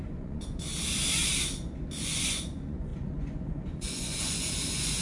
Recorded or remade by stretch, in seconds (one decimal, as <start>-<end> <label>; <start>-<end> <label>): 0.0-0.7 remade; 0.7-2.0 recorded; 2.0-5.0 remade